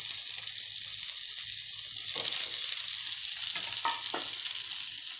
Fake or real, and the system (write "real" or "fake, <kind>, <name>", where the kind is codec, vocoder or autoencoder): real